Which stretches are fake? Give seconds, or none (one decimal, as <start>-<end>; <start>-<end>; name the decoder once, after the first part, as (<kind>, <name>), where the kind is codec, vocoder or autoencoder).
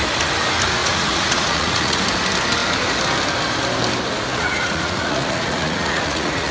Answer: 0.8-2.0 (vocoder, Vocos); 4.3-6.5